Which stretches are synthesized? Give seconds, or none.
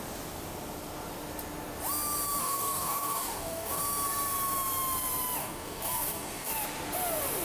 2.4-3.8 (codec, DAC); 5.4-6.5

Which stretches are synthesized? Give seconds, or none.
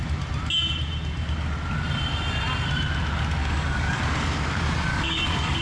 3.4-4.0 (codec, DAC); 4.9-5.6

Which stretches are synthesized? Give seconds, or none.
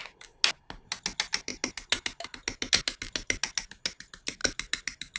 none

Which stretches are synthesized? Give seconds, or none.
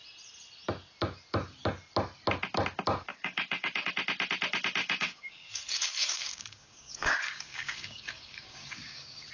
3.1-3.9 (codec, DAC); 4.8-9.3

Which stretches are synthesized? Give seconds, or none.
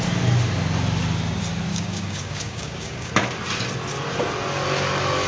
1.7-3.1 (codec, DAC)